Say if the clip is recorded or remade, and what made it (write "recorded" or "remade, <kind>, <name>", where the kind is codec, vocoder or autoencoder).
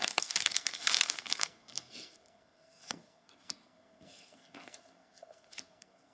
remade, codec, SNAC